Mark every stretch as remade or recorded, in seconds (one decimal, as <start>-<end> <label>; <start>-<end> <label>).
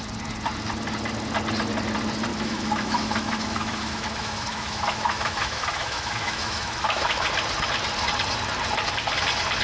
0.0-2.3 recorded; 2.3-7.3 remade; 7.3-9.6 recorded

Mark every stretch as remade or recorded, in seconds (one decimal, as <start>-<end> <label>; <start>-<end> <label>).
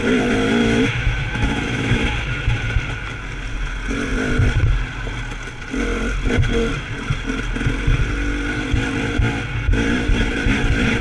0.0-0.6 recorded; 0.6-2.0 remade; 2.0-11.0 recorded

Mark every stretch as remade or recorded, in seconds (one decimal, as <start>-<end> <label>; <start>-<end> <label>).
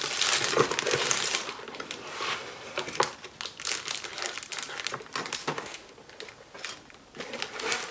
0.0-5.4 recorded; 5.4-5.9 remade; 5.9-7.9 recorded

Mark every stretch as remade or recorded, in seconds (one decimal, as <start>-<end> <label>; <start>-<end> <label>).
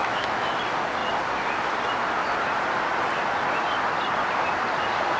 0.0-0.6 remade; 0.6-5.2 recorded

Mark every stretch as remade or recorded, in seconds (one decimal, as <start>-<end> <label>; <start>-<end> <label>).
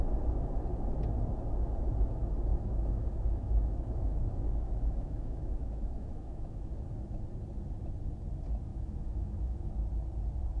0.0-2.5 recorded; 2.5-6.7 remade; 6.7-8.7 recorded; 8.7-9.7 remade; 9.7-10.6 recorded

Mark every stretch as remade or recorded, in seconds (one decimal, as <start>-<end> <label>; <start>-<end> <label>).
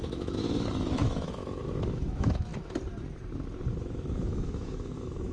0.0-2.5 remade; 2.5-3.7 recorded; 3.7-5.3 remade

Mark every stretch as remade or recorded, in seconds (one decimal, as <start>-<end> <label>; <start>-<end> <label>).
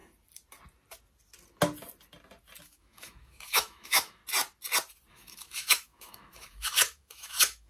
0.0-2.6 recorded; 2.6-4.2 remade; 4.2-5.1 recorded; 5.1-7.7 remade